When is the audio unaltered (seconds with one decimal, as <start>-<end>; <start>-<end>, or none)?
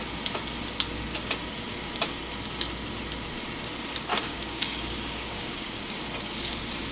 0.0-4.1; 6.0-6.9